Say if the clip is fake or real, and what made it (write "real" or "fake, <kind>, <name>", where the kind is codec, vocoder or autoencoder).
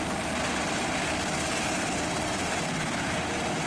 real